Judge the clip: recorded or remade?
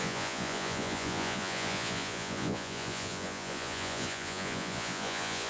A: remade